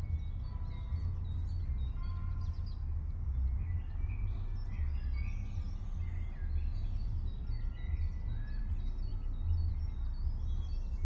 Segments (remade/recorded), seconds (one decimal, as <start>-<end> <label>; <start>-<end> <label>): 0.0-11.0 recorded